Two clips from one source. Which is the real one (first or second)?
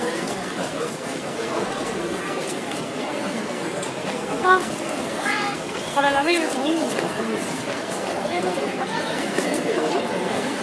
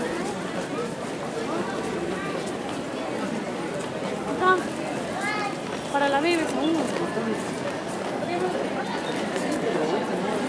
second